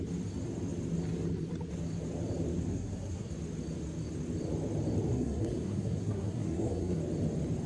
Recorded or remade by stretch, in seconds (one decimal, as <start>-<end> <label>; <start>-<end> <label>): 0.0-2.7 recorded; 2.7-3.3 remade; 3.3-5.1 recorded; 5.1-7.0 remade; 7.0-7.7 recorded